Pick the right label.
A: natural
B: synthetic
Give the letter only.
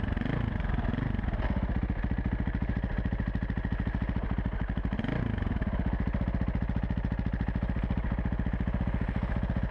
A